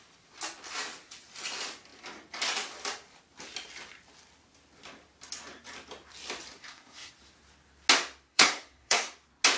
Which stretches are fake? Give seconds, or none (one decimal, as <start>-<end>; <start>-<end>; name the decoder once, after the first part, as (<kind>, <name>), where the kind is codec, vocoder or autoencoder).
6.6-7.1 (codec, SNAC); 8.3-9.1